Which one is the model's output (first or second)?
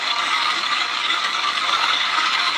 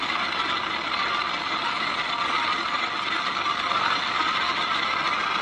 first